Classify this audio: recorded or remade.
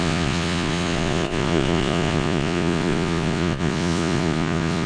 remade